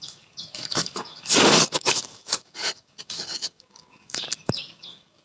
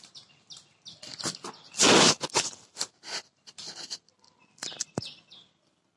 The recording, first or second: second